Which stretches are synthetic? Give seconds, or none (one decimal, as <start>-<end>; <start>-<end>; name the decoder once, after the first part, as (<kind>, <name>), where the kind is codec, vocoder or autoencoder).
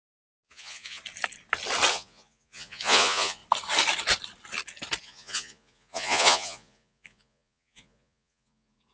0.0-1.0 (vocoder, Vocos); 1.9-3.4; 5.0-8.9